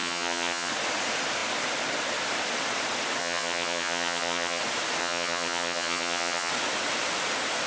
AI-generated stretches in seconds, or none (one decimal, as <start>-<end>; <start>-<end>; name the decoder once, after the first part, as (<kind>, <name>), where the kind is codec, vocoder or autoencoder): 0.0-0.7 (vocoder, HiFi-GAN); 3.2-4.6; 5.0-6.5